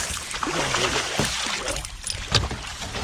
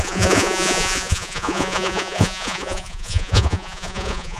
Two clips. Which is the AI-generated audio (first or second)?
second